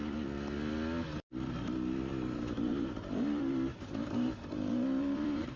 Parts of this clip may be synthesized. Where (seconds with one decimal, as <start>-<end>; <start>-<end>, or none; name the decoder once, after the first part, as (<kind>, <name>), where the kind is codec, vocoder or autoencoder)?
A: 2.1-5.6 (vocoder, BigVGAN v2)

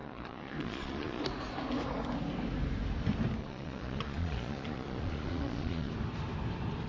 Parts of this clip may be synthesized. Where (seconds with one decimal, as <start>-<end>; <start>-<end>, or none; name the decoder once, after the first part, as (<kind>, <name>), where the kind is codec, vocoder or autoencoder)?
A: 0.0-1.2 (vocoder, Vocos); 3.4-5.9

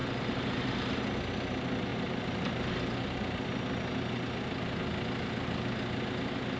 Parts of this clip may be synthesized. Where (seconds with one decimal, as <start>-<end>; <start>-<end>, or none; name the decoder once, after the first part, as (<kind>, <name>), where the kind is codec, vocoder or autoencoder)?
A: 0.0-0.9 (vocoder, BigVGAN v2); 1.9-2.7

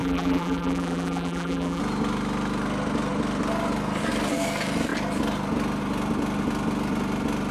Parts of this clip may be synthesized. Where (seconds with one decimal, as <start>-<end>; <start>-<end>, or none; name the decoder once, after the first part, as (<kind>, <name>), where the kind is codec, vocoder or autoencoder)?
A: 0.0-1.8 (vocoder, BigVGAN v2)